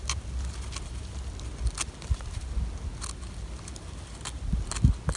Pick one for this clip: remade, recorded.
recorded